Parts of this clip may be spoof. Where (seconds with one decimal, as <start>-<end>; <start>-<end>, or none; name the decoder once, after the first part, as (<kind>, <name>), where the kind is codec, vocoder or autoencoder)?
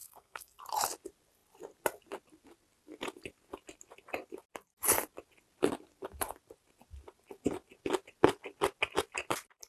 0.0-0.6 (codec, SNAC)